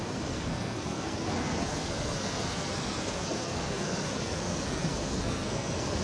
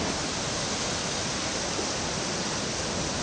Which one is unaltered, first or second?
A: second